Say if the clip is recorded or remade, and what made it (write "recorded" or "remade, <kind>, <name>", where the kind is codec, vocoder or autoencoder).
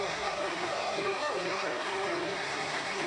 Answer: remade, codec, SNAC